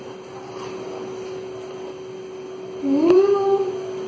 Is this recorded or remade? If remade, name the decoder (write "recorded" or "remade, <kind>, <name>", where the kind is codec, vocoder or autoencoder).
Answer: remade, vocoder, BigVGAN v2